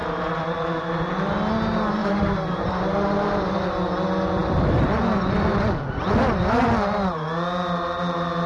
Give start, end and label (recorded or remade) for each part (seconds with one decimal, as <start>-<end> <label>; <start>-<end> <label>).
0.0-0.8 remade; 0.8-2.0 recorded; 2.0-3.5 remade; 3.5-8.5 recorded